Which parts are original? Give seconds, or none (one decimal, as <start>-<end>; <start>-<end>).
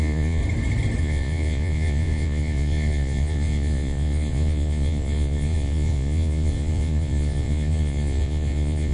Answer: 0.4-1.0